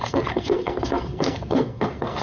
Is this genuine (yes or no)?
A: no